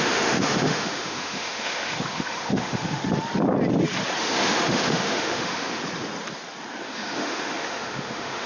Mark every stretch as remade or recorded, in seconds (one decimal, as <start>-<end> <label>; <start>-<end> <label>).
0.0-3.0 remade; 3.0-4.2 recorded; 4.2-5.8 remade; 5.8-6.8 recorded; 6.8-8.5 remade